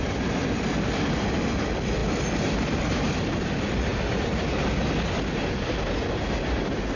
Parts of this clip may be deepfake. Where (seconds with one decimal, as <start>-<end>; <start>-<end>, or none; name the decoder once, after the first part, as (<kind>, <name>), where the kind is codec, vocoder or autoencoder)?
none